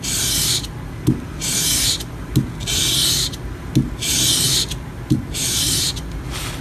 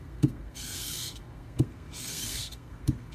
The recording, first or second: first